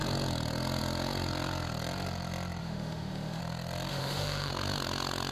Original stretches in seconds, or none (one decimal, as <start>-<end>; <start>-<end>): 0.0-2.6; 3.4-3.9; 4.5-5.3